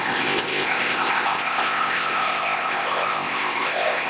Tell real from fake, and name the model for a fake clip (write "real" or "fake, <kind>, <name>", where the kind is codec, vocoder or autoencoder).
fake, codec, ZipCodec